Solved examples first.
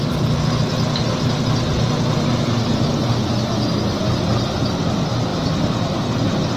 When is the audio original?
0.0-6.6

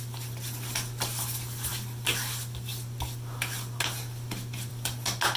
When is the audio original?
0.0-5.4

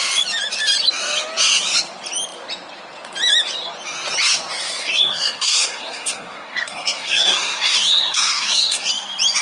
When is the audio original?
0.0-4.6; 8.9-9.4